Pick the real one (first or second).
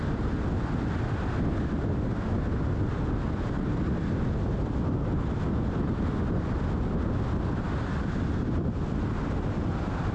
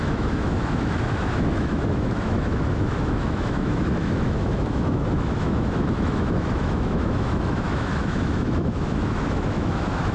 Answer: first